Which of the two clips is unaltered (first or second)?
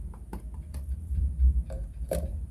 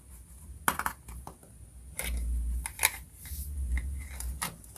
second